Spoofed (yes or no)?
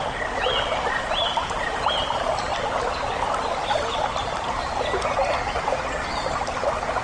no